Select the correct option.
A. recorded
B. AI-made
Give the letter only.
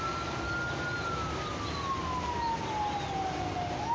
A